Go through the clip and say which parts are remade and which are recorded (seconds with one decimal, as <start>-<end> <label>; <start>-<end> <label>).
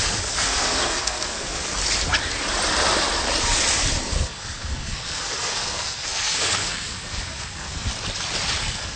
0.0-1.7 remade; 1.7-4.0 recorded; 4.0-7.9 remade; 7.9-8.6 recorded; 8.6-9.0 remade